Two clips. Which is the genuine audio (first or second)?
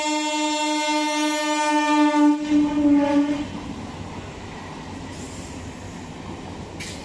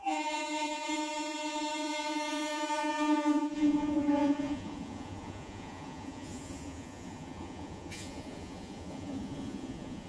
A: first